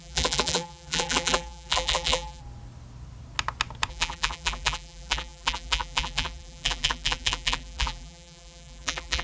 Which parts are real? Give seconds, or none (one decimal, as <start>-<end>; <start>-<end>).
2.4-3.9